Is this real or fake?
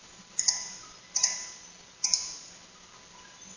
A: real